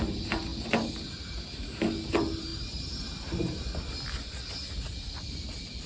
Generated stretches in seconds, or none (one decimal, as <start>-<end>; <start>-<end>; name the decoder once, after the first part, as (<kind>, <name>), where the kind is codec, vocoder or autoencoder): none

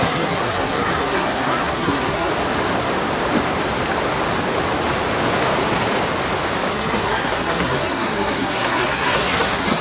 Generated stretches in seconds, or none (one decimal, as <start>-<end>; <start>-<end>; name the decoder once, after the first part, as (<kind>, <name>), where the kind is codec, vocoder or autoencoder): 0.0-2.3 (codec, SNAC); 6.7-9.8